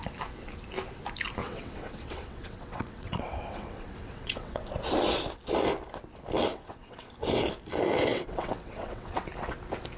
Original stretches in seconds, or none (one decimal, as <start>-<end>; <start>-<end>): 0.0-1.4; 4.6-6.5; 7.1-8.1; 9.3-10.0